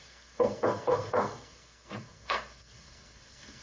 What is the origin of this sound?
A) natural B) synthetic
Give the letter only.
B